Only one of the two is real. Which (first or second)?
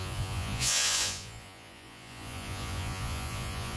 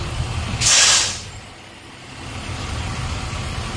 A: second